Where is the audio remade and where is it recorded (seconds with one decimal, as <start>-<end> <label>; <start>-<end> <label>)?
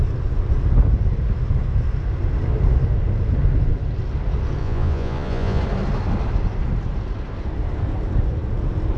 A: 0.0-4.6 recorded; 4.6-5.6 remade; 5.6-9.0 recorded